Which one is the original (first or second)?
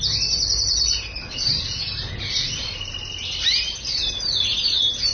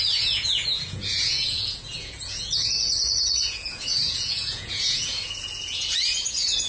first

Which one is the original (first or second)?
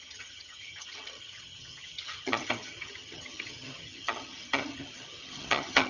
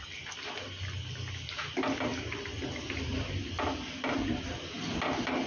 second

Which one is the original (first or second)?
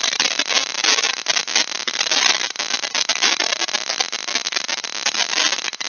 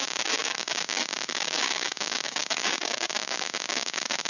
first